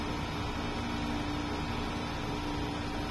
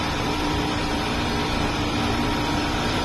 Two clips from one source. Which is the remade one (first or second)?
second